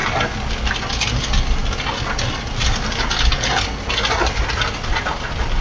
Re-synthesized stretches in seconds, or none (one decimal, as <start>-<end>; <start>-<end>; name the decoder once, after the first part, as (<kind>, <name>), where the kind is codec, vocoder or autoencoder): none